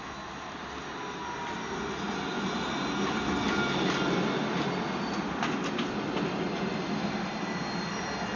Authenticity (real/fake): real